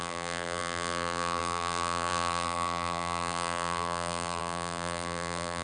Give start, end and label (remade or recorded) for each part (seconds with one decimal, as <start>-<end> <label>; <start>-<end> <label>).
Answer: 0.0-5.6 remade